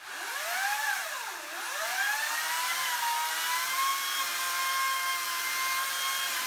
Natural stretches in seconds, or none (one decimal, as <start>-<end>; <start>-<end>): 0.0-3.9; 4.6-6.5